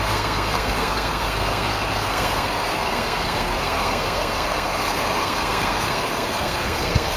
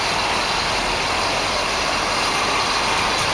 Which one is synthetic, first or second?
first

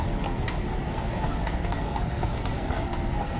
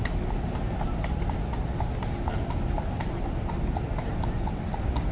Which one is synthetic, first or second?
first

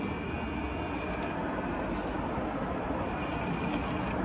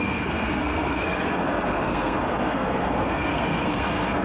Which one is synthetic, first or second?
second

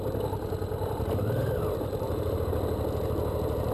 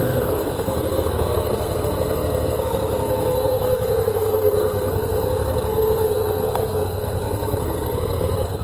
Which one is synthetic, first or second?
second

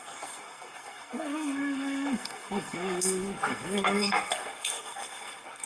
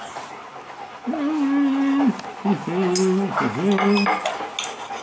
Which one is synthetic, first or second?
first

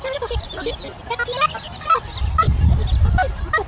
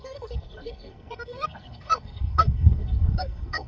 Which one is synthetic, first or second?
second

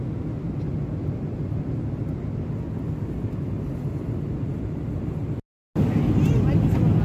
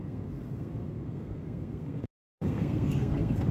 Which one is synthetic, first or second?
second